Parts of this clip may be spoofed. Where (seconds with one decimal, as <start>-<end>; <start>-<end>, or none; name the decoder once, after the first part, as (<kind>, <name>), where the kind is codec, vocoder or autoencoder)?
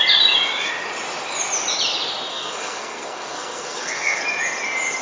2.3-4.2 (codec, SNAC)